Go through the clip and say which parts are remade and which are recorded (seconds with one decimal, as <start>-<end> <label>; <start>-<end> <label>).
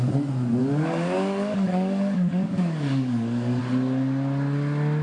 0.0-0.6 recorded; 0.6-3.6 remade; 3.6-5.0 recorded